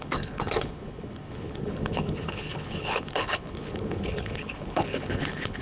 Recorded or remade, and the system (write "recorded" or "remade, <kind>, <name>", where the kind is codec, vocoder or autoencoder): remade, codec, HILCodec